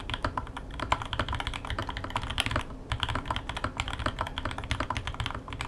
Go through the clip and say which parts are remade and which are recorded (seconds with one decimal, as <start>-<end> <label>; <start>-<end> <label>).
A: 0.0-1.0 remade; 1.0-5.7 recorded